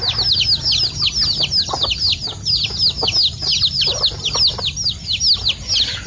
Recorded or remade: recorded